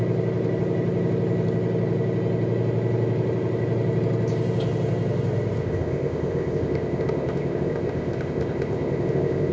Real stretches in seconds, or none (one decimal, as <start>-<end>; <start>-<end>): 0.0-5.6